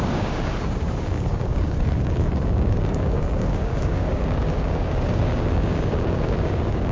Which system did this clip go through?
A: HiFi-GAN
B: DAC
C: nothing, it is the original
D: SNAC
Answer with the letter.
B